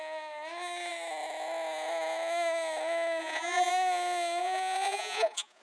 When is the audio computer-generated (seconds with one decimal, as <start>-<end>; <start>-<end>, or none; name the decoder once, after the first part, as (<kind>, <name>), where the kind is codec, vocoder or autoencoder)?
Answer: 3.2-3.7 (vocoder, Vocos); 4.4-5.6